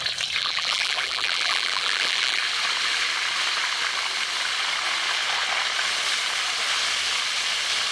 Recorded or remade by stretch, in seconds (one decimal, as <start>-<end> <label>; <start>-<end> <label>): 0.0-0.4 recorded; 0.4-2.4 remade; 2.4-7.9 recorded